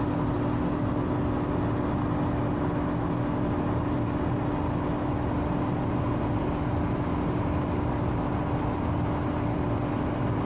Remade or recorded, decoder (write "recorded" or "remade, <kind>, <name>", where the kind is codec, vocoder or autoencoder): recorded